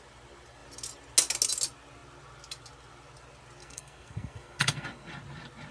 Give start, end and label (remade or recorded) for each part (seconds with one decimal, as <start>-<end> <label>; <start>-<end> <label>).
0.0-3.6 recorded; 3.6-5.1 remade; 5.1-5.7 recorded